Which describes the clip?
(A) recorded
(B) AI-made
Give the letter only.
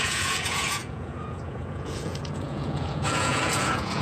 B